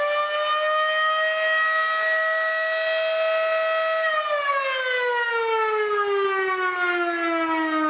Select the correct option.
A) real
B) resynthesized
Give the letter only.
A